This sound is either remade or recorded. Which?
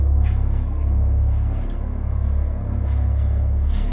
remade